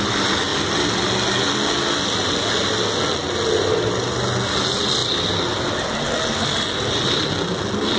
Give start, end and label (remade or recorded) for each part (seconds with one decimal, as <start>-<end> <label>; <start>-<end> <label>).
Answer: 0.0-8.0 recorded

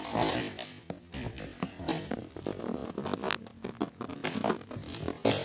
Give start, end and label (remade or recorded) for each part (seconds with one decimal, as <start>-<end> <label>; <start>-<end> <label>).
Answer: 0.0-5.4 recorded

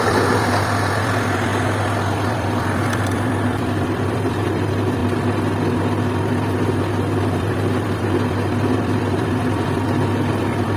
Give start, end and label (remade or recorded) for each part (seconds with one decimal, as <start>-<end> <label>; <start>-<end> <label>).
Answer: 0.0-1.5 remade; 1.5-2.3 recorded; 2.3-5.0 remade; 5.0-7.3 recorded; 7.3-10.8 remade

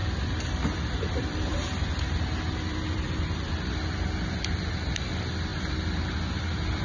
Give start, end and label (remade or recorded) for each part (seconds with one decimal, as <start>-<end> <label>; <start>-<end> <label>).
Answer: 0.0-3.5 remade; 3.5-6.8 recorded